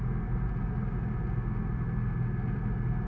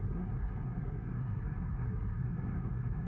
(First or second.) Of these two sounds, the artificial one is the second